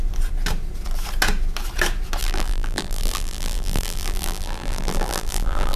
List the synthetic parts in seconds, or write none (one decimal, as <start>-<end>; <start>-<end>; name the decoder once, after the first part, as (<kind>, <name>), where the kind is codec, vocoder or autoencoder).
2.2-5.8 (vocoder, BigVGAN v2)